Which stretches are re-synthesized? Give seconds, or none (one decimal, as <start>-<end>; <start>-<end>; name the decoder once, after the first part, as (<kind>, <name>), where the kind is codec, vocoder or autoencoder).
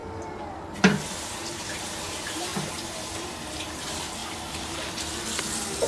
none